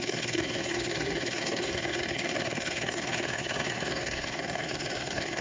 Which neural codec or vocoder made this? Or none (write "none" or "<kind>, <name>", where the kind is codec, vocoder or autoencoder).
codec, SNAC